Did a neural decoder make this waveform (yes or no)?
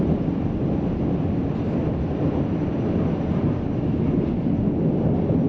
no